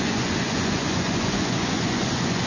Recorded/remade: remade